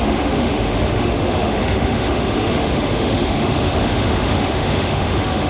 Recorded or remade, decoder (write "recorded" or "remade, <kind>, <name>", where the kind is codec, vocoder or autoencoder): remade, autoencoder, DAC-VAE